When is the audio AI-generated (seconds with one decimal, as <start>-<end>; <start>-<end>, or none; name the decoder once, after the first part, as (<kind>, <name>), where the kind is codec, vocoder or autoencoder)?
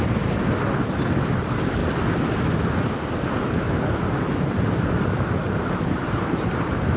0.0-0.4 (vocoder, BigVGAN v2); 1.4-1.8; 5.7-7.0